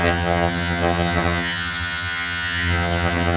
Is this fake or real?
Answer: fake